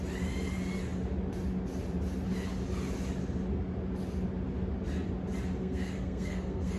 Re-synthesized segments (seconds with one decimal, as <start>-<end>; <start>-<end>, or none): 5.6-6.8